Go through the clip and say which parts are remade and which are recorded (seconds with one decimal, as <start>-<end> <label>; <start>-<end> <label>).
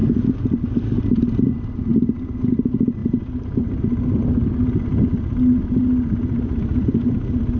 0.0-7.6 recorded